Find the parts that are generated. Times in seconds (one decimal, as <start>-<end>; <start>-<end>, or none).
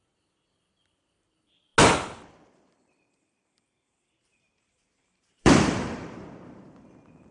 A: 4.3-6.7